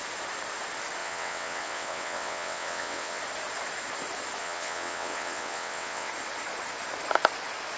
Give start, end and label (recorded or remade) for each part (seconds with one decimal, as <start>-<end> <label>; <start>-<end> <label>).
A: 0.0-1.0 recorded; 1.0-3.2 remade; 3.2-4.4 recorded; 4.4-6.1 remade; 6.1-7.8 recorded